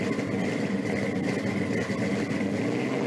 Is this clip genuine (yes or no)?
yes